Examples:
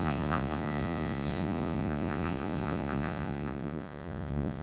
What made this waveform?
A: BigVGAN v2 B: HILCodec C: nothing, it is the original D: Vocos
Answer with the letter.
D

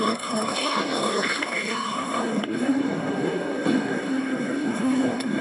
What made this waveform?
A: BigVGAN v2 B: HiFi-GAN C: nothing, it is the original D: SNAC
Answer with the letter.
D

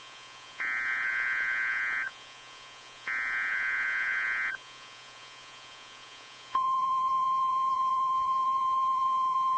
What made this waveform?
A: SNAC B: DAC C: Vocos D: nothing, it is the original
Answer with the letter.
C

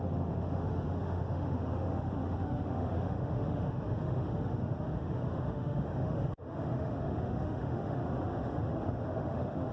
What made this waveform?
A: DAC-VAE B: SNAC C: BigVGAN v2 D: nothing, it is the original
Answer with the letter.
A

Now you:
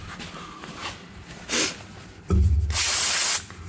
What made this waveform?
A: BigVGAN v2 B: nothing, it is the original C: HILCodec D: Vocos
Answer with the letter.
B